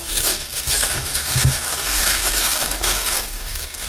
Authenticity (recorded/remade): remade